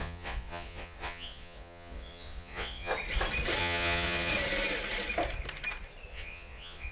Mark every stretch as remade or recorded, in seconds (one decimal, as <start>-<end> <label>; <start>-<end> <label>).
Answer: 0.0-2.9 remade; 2.9-3.6 recorded; 3.6-4.3 remade; 4.3-6.1 recorded; 6.1-6.9 remade